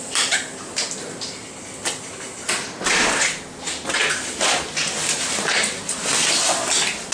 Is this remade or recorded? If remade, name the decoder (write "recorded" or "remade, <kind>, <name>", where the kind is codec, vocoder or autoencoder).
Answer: recorded